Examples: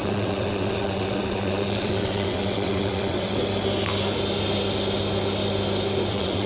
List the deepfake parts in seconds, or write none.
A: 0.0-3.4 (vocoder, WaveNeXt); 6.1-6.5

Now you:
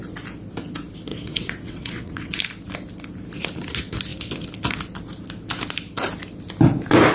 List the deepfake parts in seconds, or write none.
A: 1.1-2.4 (vocoder, WaveNeXt)